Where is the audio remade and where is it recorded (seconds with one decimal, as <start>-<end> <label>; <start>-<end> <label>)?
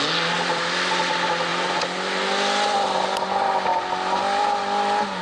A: 0.0-5.2 recorded